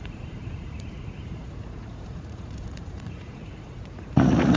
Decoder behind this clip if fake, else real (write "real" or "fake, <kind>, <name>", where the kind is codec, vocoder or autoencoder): fake, vocoder, Vocos